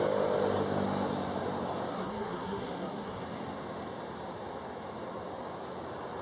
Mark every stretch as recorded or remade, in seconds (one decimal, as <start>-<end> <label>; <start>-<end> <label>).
0.0-1.9 recorded; 1.9-3.2 remade; 3.2-6.2 recorded